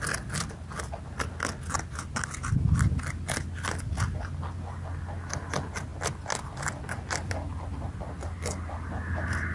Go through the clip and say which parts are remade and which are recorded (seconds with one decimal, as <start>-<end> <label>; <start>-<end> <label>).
0.0-9.5 recorded